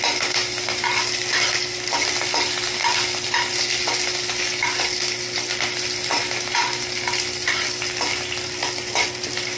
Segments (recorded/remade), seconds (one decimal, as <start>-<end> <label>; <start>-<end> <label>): 0.0-9.6 recorded